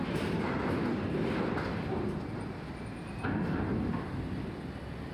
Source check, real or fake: real